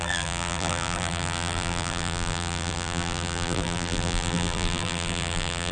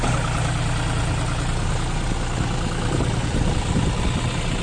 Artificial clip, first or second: first